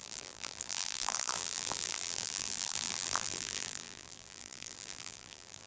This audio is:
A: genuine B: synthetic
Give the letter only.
B